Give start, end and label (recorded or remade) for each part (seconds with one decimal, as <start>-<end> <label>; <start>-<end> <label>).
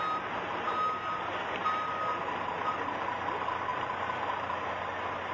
0.0-3.7 recorded; 3.7-4.7 remade; 4.7-5.3 recorded